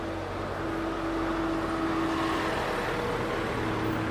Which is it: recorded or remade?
recorded